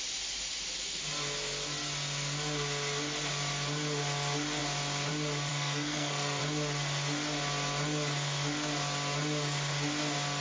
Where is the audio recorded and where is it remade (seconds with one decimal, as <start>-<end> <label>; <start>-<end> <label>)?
0.0-5.5 recorded; 5.5-6.4 remade; 6.4-10.4 recorded